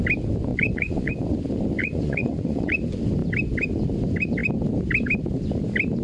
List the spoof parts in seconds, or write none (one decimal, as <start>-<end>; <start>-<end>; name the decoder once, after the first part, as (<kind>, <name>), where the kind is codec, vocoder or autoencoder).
0.5-1.1 (vocoder, Vocos); 1.8-2.7